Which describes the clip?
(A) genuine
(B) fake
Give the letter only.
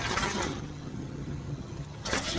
B